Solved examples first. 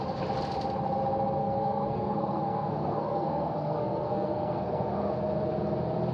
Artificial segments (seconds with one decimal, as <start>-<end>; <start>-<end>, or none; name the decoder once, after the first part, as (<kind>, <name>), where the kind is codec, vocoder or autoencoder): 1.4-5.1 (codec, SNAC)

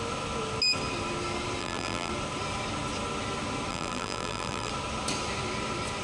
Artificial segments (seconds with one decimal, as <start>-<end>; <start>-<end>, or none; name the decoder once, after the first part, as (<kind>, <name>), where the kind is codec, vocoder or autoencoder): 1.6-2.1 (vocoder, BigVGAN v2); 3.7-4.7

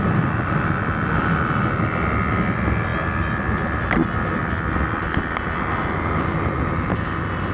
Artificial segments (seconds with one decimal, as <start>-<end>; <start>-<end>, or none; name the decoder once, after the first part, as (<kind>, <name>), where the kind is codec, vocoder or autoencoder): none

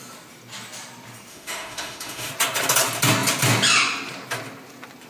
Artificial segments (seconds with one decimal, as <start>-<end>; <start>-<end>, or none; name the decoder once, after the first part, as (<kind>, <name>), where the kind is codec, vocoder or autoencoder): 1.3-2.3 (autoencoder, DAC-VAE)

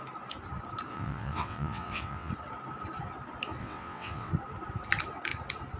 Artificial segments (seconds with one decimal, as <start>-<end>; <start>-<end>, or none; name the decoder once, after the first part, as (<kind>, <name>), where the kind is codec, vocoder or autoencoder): 0.9-2.3 (vocoder, WaveNeXt); 3.6-4.3

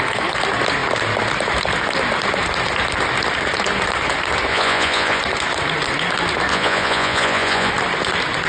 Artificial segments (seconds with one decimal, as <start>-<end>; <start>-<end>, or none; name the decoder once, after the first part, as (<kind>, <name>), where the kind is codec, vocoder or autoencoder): 4.5-5.2 (vocoder, Vocos); 6.5-7.7

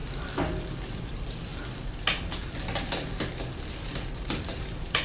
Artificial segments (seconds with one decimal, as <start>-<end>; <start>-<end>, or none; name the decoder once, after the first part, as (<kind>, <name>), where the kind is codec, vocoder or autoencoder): 1.0-1.5 (vocoder, BigVGAN v2); 3.8-5.0

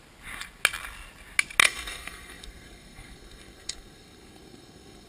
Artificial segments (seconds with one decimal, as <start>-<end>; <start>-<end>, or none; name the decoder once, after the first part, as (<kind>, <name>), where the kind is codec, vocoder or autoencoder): 1.6-5.1 (codec, SNAC)